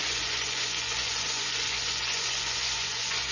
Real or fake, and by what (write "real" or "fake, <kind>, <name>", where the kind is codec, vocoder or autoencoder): fake, vocoder, Vocos